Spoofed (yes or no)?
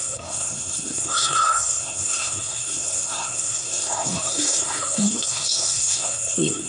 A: yes